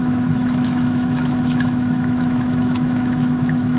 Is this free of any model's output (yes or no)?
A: no